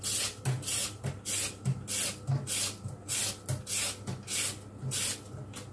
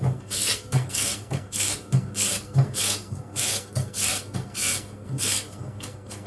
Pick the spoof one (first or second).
second